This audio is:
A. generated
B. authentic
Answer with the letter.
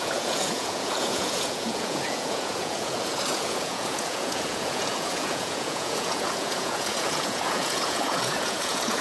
A